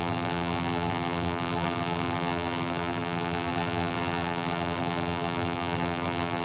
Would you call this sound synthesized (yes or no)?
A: yes